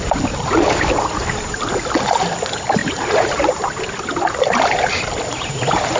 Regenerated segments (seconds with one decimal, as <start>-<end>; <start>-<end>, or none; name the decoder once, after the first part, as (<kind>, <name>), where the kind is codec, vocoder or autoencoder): 2.8-5.3 (vocoder, BigVGAN v2)